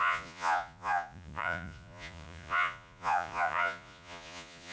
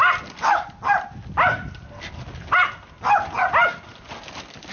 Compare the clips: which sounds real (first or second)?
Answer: second